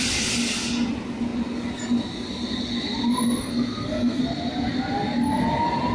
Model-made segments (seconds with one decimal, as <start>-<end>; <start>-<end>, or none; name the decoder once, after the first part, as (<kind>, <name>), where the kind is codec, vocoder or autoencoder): 3.4-4.2 (codec, SNAC)